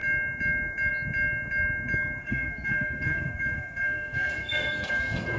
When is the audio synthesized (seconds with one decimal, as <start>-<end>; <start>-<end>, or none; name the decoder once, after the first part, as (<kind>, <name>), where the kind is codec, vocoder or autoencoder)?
2.2-5.4 (codec, SNAC)